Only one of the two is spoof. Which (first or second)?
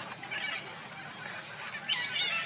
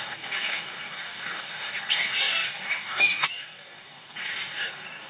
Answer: second